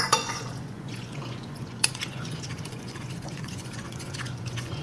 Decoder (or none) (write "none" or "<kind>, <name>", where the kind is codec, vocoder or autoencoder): vocoder, Vocos